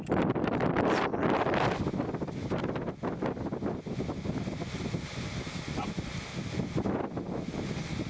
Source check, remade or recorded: recorded